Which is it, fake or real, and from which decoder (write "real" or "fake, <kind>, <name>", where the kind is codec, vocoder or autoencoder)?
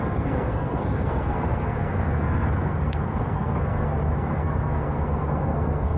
fake, codec, SNAC